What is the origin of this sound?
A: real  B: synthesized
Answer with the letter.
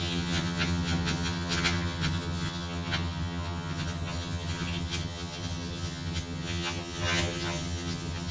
B